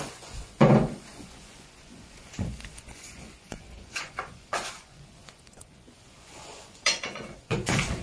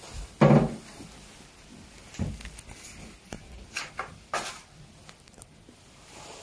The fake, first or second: first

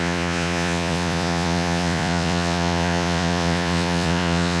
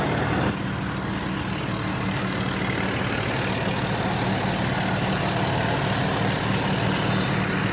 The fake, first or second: first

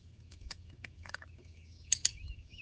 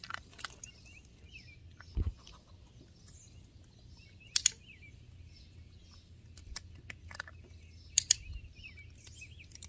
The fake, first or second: first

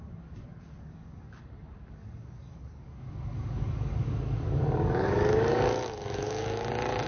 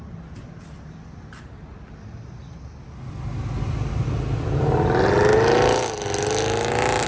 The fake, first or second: first